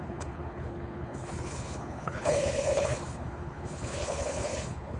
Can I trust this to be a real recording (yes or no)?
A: no